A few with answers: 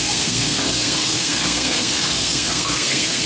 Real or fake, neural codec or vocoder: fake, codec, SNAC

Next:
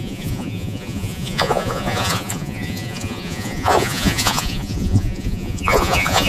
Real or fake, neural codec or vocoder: fake, vocoder, Vocos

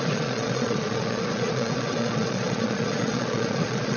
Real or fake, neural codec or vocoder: fake, vocoder, Vocos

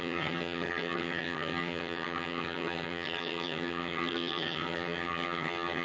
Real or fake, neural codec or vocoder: fake, vocoder, HiFi-GAN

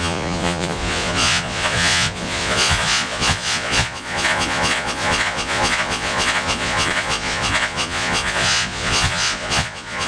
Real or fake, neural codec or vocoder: fake, vocoder, Vocos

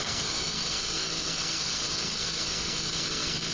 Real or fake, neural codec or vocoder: fake, codec, SNAC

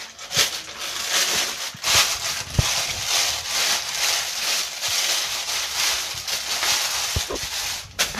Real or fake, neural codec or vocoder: real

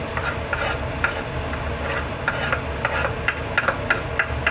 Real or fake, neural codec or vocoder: real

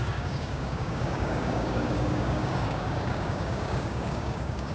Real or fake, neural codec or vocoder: fake, codec, DAC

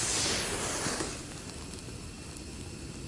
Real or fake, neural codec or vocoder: real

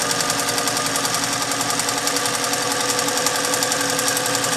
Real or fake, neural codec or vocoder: real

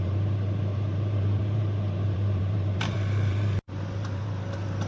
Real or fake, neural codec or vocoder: fake, vocoder, BigVGAN v2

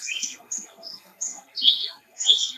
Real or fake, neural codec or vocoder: fake, codec, SNAC